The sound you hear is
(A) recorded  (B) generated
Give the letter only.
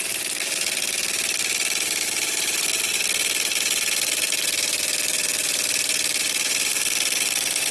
B